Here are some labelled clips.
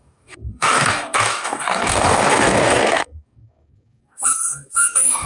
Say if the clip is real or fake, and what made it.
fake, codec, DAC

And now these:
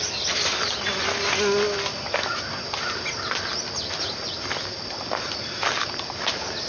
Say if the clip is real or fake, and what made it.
real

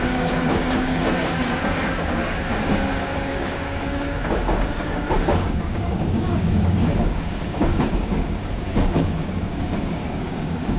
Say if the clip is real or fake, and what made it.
fake, codec, DAC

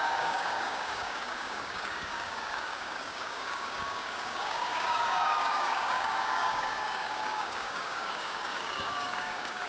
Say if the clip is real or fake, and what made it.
fake, codec, DAC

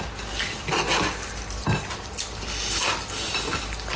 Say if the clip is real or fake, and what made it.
real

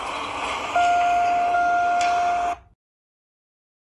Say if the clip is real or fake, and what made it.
real